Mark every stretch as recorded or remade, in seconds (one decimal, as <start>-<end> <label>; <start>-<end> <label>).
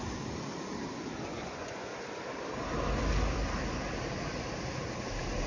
0.0-1.3 recorded; 1.3-1.9 remade; 1.9-5.5 recorded